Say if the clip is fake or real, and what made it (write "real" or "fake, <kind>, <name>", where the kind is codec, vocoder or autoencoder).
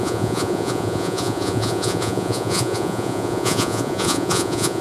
fake, vocoder, Vocos